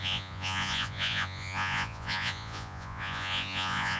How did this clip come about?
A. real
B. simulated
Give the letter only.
B